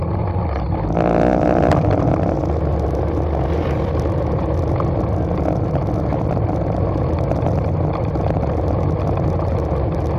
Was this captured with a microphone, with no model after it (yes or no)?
yes